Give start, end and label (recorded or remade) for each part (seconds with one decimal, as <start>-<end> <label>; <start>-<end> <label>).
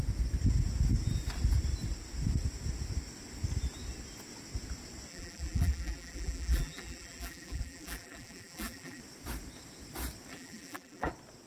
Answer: 0.0-5.1 recorded; 5.1-9.0 remade; 9.0-10.3 recorded; 10.3-11.1 remade; 11.1-11.5 recorded